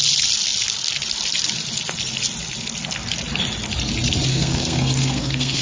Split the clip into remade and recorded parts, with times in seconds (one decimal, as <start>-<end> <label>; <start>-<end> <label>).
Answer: 0.0-4.3 recorded; 4.3-5.6 remade